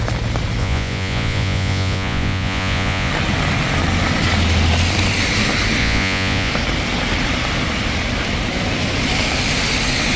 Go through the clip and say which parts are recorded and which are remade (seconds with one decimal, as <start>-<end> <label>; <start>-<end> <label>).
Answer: 0.0-0.6 recorded; 0.6-3.1 remade; 3.1-5.8 recorded; 5.8-6.5 remade; 6.5-10.2 recorded